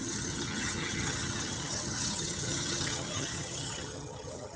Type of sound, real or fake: fake